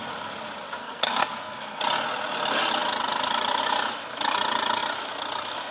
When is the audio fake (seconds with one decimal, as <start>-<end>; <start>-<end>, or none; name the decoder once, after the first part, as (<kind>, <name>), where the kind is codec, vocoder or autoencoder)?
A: 0.8-1.8 (codec, SNAC)